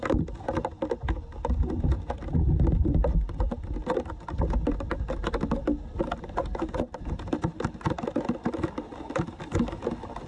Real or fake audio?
real